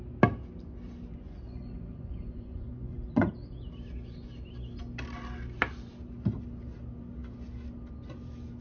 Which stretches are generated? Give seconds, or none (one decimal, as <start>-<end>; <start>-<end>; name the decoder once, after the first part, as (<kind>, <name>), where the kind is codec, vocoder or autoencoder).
1.1-3.3 (vocoder, Vocos)